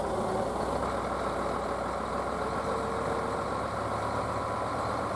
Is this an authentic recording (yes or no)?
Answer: yes